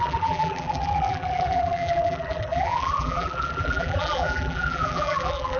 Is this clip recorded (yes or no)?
no